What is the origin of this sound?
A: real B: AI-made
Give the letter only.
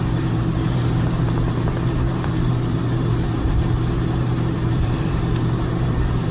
B